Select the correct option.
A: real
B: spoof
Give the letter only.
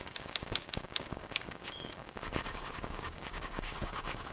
B